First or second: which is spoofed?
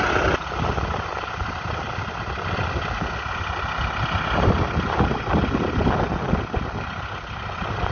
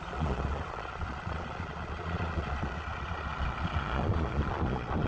second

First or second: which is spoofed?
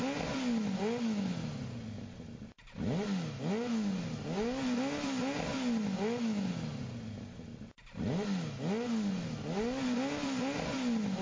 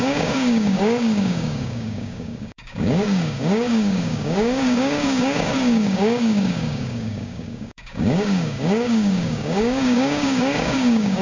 second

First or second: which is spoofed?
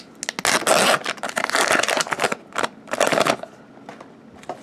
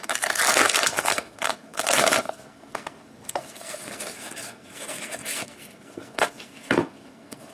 second